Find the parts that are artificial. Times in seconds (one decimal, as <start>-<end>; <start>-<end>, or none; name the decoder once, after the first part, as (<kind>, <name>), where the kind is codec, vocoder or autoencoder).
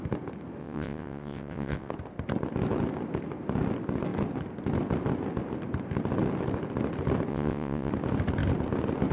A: 0.6-1.9 (vocoder, WaveNeXt); 7.3-7.9